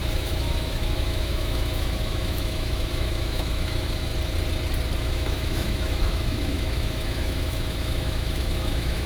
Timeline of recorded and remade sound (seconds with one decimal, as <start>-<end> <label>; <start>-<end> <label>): 0.0-4.1 remade; 4.1-5.0 recorded; 5.0-9.1 remade